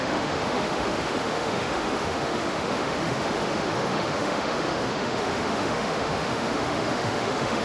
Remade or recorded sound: remade